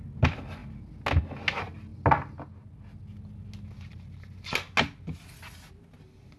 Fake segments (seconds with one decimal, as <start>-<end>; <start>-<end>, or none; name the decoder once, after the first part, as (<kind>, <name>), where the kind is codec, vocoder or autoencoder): none